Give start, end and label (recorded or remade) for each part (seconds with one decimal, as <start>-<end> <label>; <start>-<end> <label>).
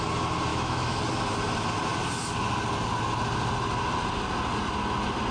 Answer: 0.0-0.5 recorded; 0.5-1.0 remade; 1.0-5.3 recorded